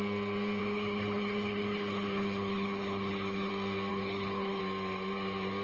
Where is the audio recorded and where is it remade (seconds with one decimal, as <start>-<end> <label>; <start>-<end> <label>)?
0.0-0.6 recorded; 0.6-3.5 remade; 3.5-3.9 recorded; 3.9-4.6 remade; 4.6-5.6 recorded